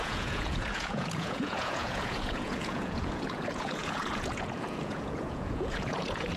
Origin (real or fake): fake